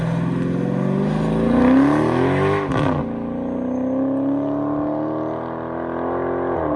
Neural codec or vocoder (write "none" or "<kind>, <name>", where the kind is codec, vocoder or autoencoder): none